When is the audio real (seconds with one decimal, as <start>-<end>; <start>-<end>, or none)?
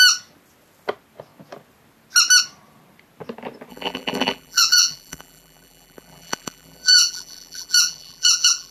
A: 0.0-3.7